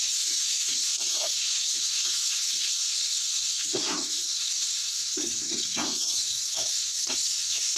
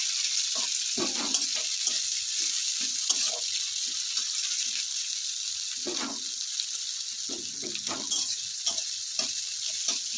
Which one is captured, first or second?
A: second